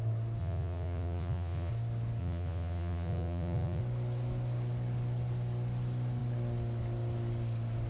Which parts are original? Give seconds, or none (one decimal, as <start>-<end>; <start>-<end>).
0.0-0.4; 1.7-2.2; 3.8-7.9